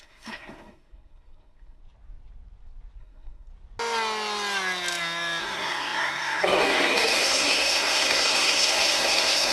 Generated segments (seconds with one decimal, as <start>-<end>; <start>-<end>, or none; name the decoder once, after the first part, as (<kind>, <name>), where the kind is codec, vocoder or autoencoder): 0.0-1.8 (codec, SNAC); 3.0-3.5; 5.4-9.5